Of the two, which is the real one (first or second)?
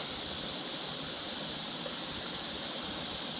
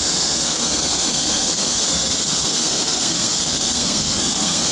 first